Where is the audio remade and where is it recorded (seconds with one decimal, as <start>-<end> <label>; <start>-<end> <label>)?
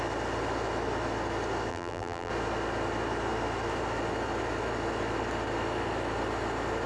0.0-1.7 recorded; 1.7-2.3 remade; 2.3-6.9 recorded